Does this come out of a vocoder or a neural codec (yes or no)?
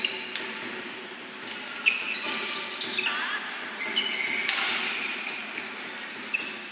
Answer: no